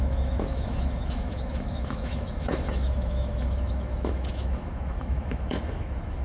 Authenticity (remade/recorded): remade